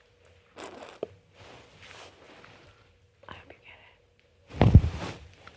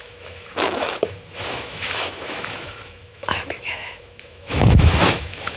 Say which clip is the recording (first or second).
first